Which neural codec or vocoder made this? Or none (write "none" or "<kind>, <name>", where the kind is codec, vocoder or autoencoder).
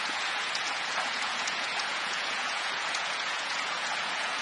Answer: vocoder, Vocos